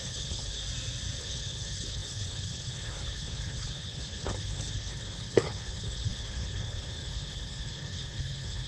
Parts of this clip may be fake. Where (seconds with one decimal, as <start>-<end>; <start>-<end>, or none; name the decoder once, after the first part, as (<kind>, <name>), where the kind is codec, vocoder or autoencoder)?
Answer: 0.0-0.6 (codec, HILCodec); 1.2-8.7